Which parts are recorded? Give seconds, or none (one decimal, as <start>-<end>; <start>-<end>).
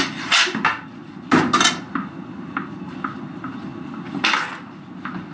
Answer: 0.0-5.3